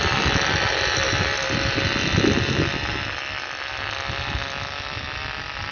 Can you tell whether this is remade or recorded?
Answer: recorded